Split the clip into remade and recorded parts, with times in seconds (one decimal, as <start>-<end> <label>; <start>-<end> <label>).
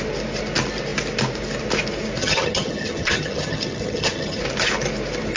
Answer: 0.0-2.2 recorded; 2.2-4.4 remade; 4.4-5.4 recorded